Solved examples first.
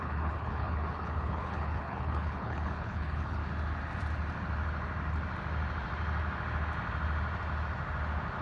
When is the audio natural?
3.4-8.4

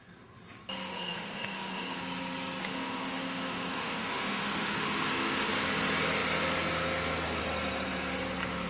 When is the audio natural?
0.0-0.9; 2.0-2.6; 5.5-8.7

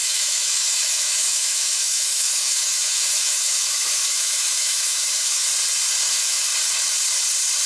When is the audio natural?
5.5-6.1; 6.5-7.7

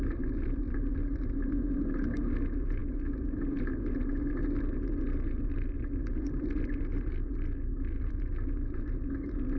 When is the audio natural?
0.0-9.6

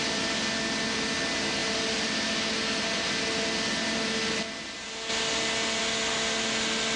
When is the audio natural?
0.0-7.0